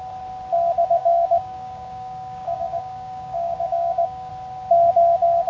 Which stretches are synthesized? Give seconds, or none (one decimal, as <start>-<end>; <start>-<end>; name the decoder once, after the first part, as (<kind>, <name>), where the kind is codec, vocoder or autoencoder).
1.0-4.3 (codec, DAC)